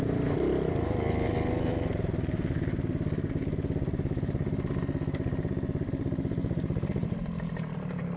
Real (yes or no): yes